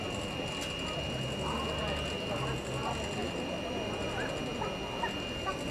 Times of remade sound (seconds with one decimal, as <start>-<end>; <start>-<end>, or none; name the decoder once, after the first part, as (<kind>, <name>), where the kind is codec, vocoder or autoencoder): 3.2-4.3 (vocoder, BigVGAN v2)